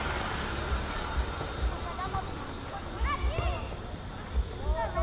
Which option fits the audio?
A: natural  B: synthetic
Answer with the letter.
A